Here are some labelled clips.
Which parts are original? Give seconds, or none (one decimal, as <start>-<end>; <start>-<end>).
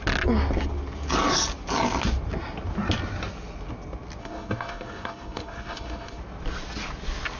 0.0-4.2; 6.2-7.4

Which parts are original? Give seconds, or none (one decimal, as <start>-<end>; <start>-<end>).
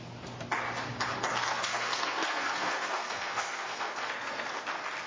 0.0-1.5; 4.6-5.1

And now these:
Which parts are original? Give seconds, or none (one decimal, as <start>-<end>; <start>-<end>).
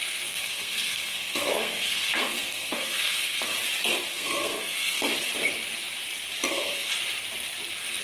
3.5-4.1; 5.1-6.5; 6.9-8.0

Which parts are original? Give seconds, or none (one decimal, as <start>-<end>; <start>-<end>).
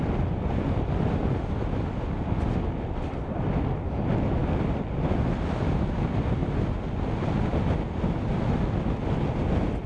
0.0-9.9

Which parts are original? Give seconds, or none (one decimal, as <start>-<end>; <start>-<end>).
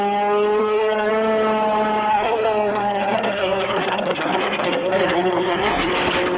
0.0-0.6; 1.1-2.1; 5.9-6.4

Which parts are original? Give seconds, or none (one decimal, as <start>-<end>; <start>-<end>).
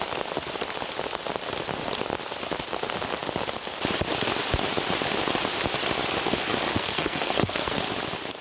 0.0-6.7; 7.8-8.4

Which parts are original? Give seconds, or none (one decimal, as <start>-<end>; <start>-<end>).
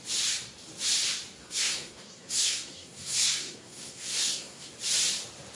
0.0-1.4; 4.7-5.5